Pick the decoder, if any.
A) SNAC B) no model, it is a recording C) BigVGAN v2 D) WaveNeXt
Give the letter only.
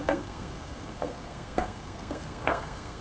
A